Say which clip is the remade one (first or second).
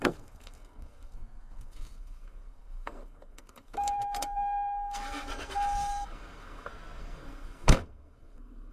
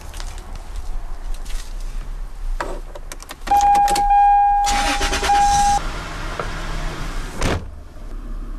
first